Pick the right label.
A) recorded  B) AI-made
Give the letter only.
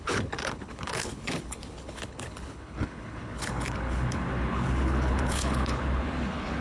B